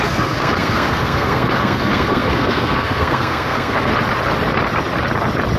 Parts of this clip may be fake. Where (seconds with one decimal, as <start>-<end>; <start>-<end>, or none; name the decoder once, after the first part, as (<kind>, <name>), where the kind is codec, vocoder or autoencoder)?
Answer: 0.0-3.9 (codec, SNAC)